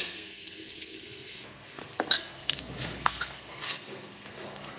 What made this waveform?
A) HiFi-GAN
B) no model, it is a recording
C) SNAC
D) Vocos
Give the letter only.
C